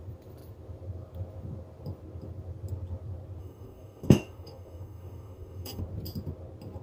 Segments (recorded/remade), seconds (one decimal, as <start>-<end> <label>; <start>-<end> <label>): 0.0-3.4 recorded; 3.4-5.8 remade; 5.8-6.8 recorded